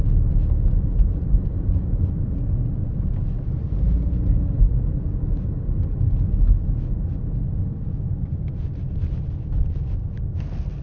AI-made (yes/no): no